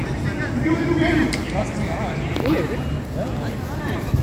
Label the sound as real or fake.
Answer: real